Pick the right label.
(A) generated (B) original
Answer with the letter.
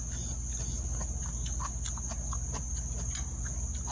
B